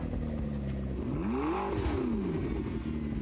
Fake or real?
real